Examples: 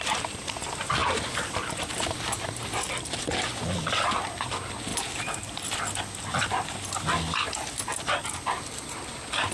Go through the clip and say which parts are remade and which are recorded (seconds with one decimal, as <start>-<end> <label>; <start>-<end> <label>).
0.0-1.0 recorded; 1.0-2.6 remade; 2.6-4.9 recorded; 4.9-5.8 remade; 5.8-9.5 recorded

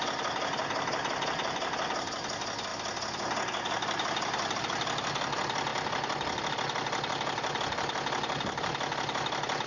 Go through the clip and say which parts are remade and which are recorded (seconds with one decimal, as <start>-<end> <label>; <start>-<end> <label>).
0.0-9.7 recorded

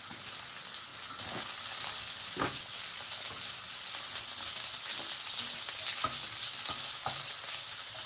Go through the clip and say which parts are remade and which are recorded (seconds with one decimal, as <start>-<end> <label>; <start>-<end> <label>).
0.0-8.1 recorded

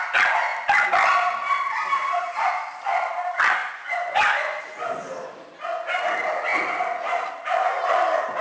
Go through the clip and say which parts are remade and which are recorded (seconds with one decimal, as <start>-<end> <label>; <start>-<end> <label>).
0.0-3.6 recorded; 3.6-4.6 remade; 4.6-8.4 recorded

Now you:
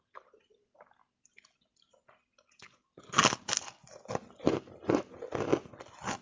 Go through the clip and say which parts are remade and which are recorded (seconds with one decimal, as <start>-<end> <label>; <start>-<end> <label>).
0.0-6.2 recorded

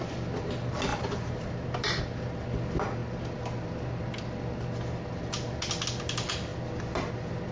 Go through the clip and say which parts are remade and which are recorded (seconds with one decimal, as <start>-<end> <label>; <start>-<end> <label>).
0.0-0.9 recorded; 0.9-2.0 remade; 2.0-7.5 recorded

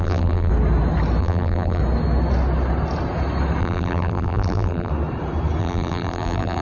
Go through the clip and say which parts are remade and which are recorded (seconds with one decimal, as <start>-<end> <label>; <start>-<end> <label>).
0.0-0.5 remade; 0.5-1.2 recorded; 1.2-1.8 remade; 1.8-3.6 recorded; 3.6-4.9 remade; 4.9-5.6 recorded; 5.6-6.6 remade

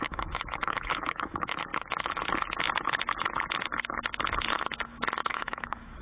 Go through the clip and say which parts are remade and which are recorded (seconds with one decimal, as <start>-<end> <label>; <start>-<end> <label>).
0.0-1.7 remade; 1.7-5.3 recorded; 5.3-6.0 remade